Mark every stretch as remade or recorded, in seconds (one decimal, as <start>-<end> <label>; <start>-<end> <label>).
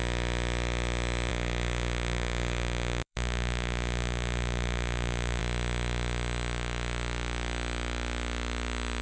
0.0-1.3 recorded; 1.3-5.4 remade; 5.4-9.0 recorded